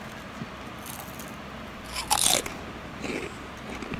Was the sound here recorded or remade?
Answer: recorded